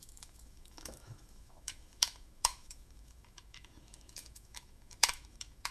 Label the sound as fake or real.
fake